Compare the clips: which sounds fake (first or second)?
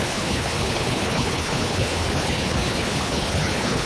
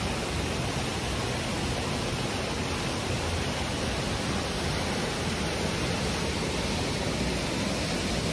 first